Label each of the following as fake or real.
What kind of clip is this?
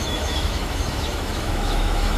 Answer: fake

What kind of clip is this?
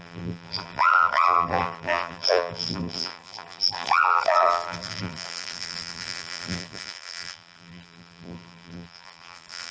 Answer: fake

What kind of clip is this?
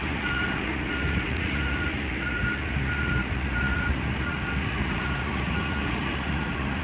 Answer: fake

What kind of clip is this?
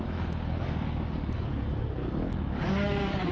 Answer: fake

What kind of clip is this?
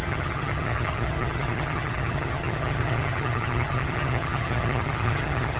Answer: fake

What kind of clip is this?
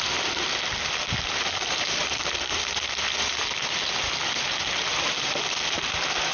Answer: fake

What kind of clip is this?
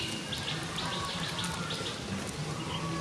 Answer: real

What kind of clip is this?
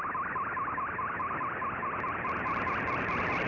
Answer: real